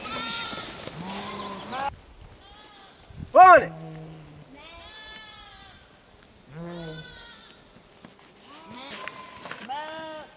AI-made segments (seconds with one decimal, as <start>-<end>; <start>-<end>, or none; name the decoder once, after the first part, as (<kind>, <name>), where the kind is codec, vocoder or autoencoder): none